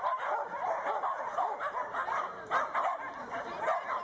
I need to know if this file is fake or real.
real